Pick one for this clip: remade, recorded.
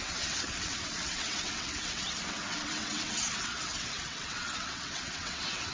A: remade